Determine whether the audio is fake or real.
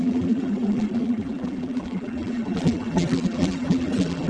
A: fake